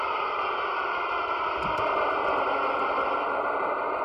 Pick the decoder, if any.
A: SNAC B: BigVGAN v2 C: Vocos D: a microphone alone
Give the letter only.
D